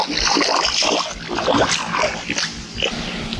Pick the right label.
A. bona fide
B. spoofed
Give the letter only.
A